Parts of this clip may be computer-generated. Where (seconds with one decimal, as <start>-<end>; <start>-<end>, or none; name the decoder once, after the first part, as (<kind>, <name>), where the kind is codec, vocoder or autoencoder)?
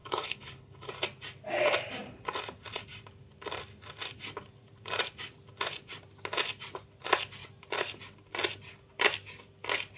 0.0-0.9 (codec, HILCodec)